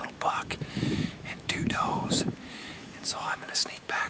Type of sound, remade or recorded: remade